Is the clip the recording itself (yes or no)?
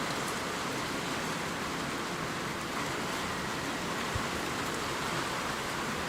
yes